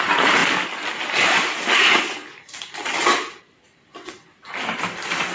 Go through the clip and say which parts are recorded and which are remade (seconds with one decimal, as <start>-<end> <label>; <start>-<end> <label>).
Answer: 0.0-5.3 recorded

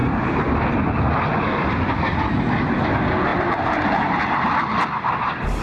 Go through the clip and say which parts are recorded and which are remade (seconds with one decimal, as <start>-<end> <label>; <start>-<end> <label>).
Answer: 0.0-3.3 recorded; 3.3-4.2 remade; 4.2-5.6 recorded

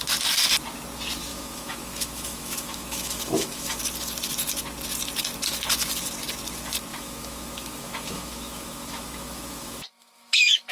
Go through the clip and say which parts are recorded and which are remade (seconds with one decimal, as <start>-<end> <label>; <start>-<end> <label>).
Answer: 0.0-1.3 recorded; 1.3-3.8 remade; 3.8-6.9 recorded; 6.9-10.7 remade

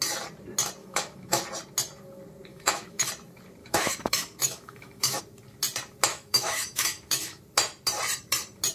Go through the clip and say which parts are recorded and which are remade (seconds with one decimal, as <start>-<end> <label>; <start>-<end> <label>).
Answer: 0.0-0.8 recorded; 0.8-1.4 remade; 1.4-2.5 recorded; 2.5-3.1 remade; 3.1-3.6 recorded; 3.6-5.2 remade; 5.2-6.1 recorded; 6.1-7.4 remade; 7.4-8.7 recorded

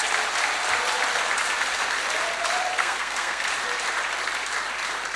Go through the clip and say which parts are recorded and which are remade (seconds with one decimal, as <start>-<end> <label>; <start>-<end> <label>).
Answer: 0.0-2.8 recorded; 2.8-3.4 remade; 3.4-5.2 recorded